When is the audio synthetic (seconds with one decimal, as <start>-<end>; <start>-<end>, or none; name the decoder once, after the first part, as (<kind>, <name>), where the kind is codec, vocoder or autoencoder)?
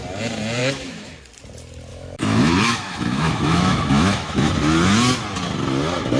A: 0.6-1.2 (autoencoder, DAC-VAE); 1.9-4.5